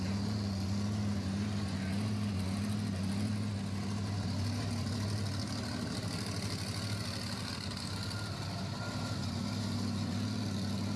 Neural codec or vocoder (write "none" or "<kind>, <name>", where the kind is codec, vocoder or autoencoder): none